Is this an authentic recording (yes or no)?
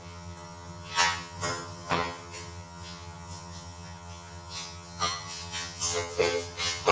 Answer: no